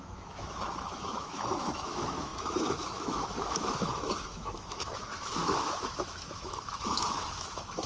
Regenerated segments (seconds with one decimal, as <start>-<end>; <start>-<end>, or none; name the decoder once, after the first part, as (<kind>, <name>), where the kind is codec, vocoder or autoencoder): 0.0-7.9 (autoencoder, DAC-VAE)